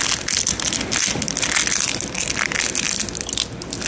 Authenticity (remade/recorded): recorded